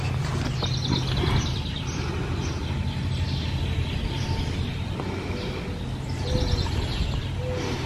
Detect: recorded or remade recorded